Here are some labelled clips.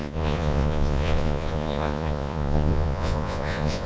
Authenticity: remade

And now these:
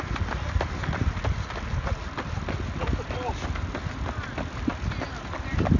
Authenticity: recorded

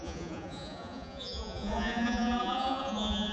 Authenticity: remade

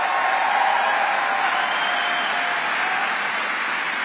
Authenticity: recorded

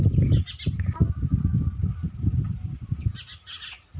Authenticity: recorded